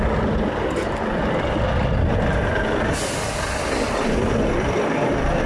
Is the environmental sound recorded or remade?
recorded